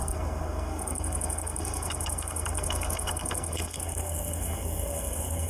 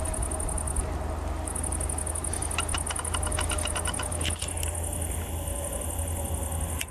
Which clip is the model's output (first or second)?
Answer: first